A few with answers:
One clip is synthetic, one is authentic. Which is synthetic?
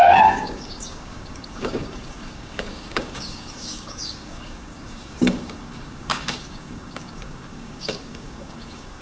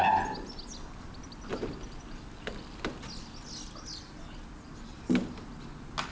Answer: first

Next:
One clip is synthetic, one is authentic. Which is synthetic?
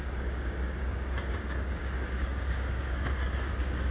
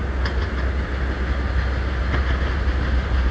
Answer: first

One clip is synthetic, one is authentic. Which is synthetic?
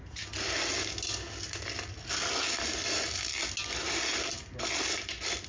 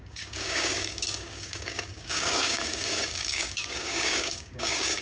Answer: second